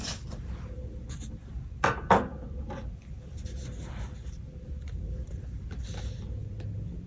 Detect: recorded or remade recorded